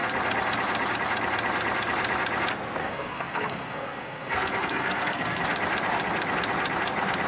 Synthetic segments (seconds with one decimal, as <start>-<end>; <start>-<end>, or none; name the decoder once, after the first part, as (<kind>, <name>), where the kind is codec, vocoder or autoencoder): 2.8-5.4 (codec, SNAC)